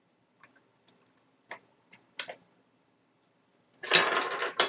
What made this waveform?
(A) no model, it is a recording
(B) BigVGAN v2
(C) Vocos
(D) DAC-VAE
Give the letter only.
A